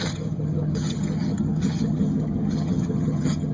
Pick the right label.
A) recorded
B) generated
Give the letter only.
B